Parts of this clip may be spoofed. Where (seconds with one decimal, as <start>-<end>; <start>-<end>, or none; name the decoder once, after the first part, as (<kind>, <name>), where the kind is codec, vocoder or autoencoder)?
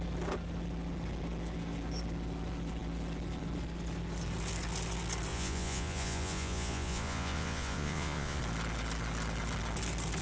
5.3-8.4 (vocoder, Vocos)